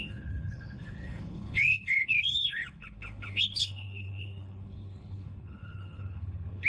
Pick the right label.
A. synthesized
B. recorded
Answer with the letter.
A